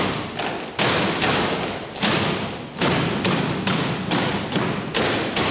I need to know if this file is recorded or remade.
recorded